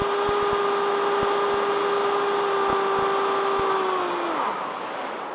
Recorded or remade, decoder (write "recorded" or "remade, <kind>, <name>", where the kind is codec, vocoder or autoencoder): recorded